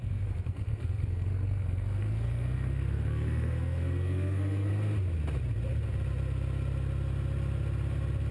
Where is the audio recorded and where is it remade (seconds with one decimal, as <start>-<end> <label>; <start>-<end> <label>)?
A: 0.0-4.7 remade; 4.7-8.3 recorded